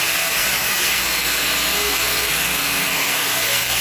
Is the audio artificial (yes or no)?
yes